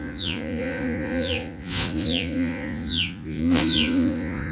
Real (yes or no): no